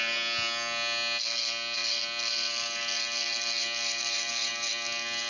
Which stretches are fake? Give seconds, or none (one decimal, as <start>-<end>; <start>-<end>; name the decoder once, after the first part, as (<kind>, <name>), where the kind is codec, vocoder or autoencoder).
none